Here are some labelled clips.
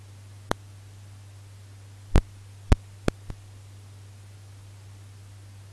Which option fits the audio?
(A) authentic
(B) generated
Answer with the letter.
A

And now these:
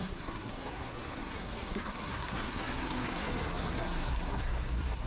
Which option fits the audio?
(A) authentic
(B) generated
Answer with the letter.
B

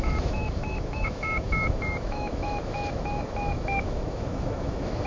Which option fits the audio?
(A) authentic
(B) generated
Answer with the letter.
B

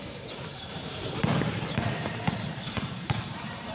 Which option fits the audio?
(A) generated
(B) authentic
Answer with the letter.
A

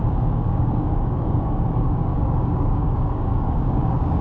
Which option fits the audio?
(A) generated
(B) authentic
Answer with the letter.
A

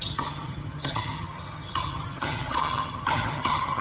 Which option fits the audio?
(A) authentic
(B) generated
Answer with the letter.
B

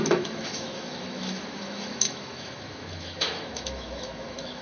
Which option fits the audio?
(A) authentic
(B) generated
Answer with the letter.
B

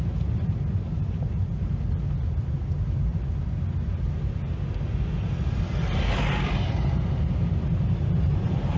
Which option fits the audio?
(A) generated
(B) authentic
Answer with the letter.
B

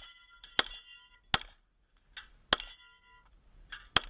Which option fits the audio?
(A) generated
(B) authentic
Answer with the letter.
B